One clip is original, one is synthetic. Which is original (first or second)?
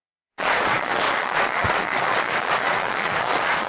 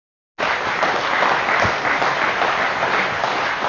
second